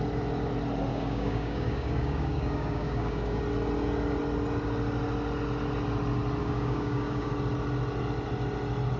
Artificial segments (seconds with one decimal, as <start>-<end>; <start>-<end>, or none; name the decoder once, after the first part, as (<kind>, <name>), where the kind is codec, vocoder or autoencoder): 0.9-3.4 (codec, DAC); 6.4-7.3